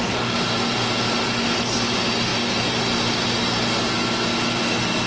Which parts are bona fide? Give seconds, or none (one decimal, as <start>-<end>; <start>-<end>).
0.0-5.1